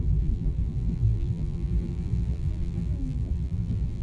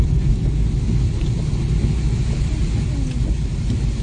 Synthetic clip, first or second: first